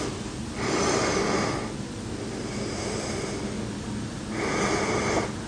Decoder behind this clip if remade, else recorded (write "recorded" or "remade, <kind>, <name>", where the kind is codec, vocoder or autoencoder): recorded